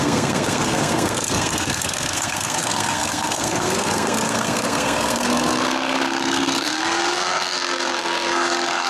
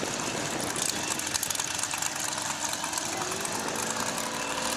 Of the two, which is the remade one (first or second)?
first